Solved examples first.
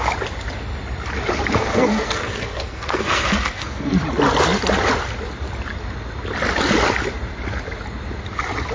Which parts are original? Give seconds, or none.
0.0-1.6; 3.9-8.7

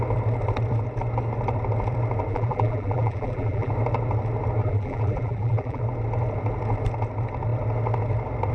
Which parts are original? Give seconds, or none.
0.0-2.3; 3.7-4.6; 5.8-8.5

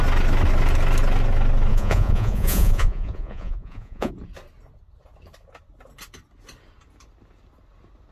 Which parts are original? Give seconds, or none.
0.0-1.7; 4.1-8.1